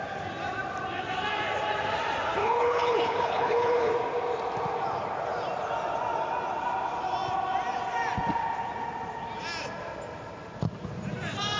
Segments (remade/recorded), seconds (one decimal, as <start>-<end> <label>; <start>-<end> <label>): 0.0-2.4 recorded; 2.4-3.9 remade; 3.9-11.6 recorded